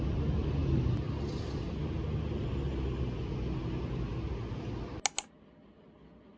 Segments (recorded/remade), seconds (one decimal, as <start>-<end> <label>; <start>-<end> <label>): 0.0-6.4 recorded